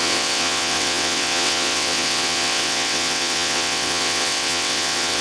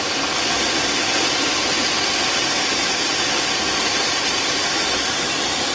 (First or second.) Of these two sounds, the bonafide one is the second